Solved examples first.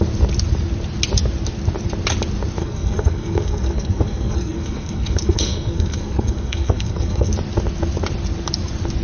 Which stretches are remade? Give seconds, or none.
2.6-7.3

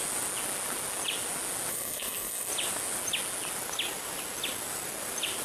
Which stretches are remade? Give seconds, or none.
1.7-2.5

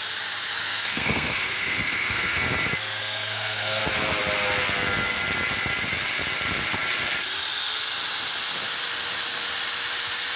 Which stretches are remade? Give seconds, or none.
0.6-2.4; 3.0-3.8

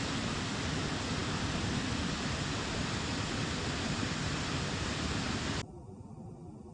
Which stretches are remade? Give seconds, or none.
none

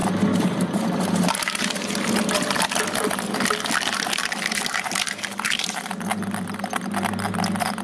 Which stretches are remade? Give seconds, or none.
none